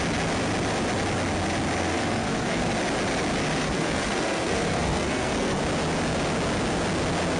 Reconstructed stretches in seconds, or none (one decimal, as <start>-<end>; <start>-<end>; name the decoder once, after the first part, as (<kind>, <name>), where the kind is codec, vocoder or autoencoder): 1.8-2.7 (codec, SNAC); 3.6-5.6